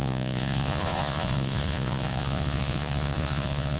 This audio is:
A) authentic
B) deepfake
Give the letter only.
B